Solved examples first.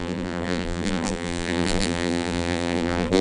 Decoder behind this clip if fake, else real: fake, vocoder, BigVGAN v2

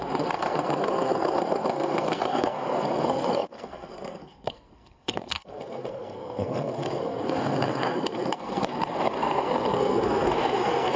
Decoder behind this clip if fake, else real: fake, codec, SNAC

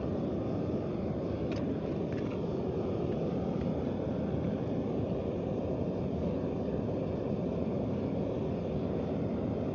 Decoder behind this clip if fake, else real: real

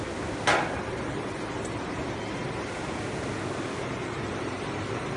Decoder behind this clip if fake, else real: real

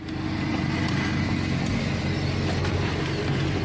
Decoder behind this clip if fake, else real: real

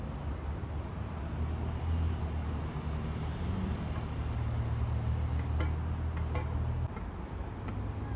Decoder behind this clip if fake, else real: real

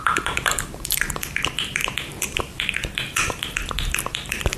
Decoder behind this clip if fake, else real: fake, vocoder, BigVGAN v2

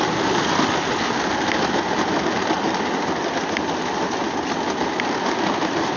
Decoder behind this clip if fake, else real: real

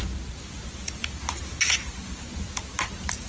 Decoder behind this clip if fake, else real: real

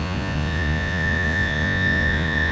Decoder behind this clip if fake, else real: fake, vocoder, Vocos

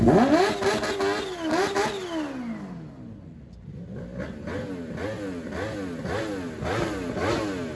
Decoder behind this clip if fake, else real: real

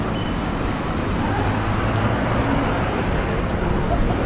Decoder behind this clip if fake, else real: real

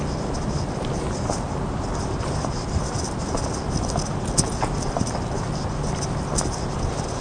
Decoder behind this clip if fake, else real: real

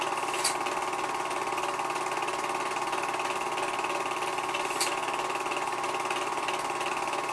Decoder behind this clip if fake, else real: real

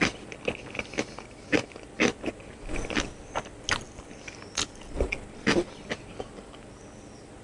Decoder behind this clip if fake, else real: real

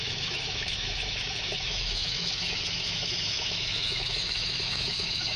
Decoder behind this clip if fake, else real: fake, autoencoder, DAC-VAE